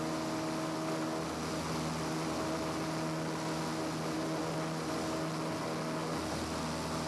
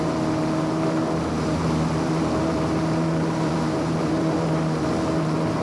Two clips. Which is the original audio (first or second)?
first